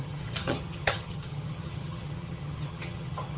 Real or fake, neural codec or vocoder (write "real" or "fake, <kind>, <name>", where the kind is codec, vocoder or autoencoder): fake, vocoder, HiFi-GAN